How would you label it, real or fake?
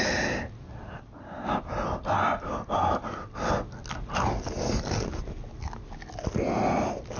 real